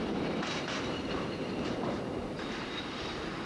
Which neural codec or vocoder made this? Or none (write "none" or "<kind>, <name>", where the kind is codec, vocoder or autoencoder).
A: vocoder, BigVGAN v2